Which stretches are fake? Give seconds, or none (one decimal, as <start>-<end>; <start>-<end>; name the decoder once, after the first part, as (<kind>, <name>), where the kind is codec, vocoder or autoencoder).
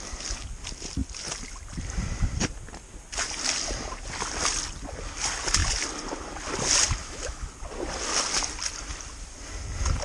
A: 7.0-7.5 (autoencoder, DAC-VAE)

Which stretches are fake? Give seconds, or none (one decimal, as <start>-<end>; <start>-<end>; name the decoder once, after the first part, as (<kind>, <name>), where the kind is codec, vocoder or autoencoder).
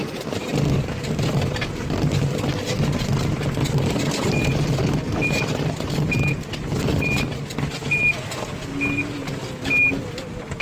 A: none